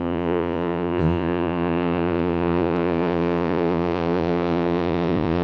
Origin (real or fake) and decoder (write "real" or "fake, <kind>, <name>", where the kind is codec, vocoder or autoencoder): fake, vocoder, Vocos